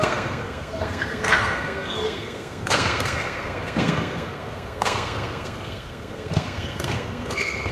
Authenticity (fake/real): fake